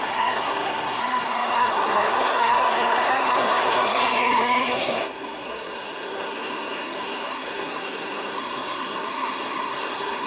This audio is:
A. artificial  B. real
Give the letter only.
A